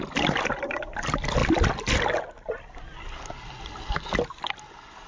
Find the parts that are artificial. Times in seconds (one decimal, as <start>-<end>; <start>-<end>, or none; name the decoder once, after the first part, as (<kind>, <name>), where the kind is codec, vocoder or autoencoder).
none